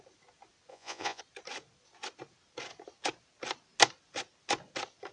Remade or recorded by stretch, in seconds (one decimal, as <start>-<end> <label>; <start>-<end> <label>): 0.0-0.7 recorded; 0.7-1.2 remade; 1.2-5.1 recorded